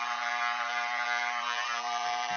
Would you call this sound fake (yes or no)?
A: yes